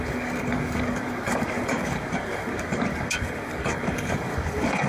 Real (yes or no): no